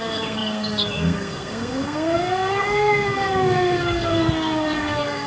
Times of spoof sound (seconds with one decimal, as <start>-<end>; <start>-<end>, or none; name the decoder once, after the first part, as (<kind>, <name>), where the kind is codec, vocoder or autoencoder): 0.0-5.3 (codec, SNAC)

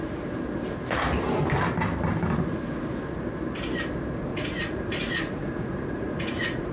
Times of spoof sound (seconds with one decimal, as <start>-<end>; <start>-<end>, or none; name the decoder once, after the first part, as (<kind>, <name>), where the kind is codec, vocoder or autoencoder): 4.3-6.7 (vocoder, Vocos)